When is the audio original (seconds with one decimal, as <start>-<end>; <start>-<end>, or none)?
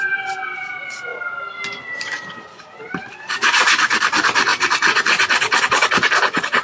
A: 1.1-1.8; 4.5-5.6